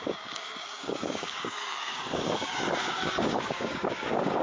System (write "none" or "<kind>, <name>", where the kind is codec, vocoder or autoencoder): codec, DAC